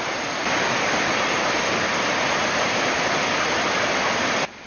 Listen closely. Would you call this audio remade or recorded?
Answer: recorded